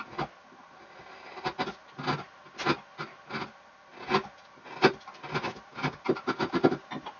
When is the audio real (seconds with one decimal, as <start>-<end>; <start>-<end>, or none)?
0.0-7.2